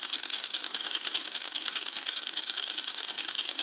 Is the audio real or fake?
fake